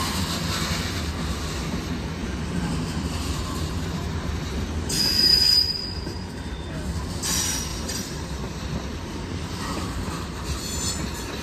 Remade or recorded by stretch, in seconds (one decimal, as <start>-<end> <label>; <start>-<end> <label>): 0.0-2.2 recorded; 2.2-6.3 remade; 6.3-7.7 recorded; 7.7-10.9 remade; 10.9-11.4 recorded